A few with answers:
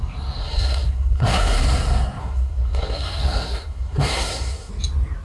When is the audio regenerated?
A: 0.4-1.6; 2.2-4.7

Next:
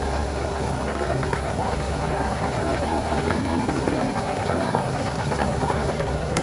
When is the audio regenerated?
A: 0.0-6.4